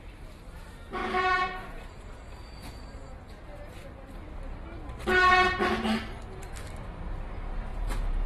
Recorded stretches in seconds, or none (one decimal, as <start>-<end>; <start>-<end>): 0.0-1.0; 3.2-7.7

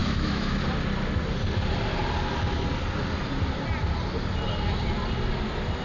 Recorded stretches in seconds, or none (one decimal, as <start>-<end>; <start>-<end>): 0.6-5.8

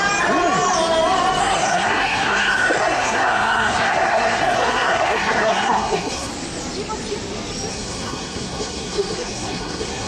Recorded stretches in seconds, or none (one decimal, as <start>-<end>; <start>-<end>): 0.0-1.4; 6.3-7.7